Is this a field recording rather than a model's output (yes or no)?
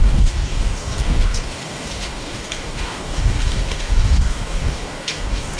no